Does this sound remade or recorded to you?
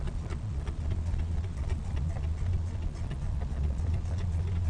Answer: remade